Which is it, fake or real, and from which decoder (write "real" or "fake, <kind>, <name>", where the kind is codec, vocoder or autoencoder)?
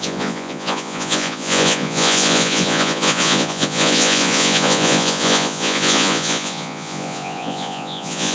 fake, vocoder, Vocos